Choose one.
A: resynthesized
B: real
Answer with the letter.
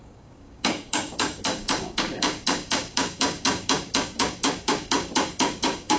A